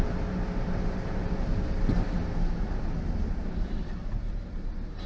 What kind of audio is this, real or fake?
real